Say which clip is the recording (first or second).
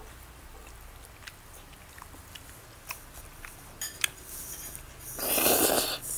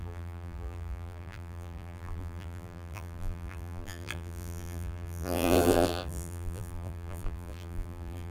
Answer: first